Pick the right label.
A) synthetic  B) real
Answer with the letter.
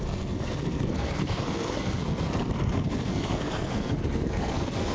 A